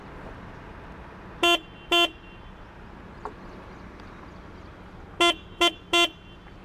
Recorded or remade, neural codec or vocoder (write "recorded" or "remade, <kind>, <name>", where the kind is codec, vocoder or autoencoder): recorded